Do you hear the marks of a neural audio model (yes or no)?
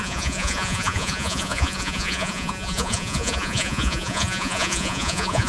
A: yes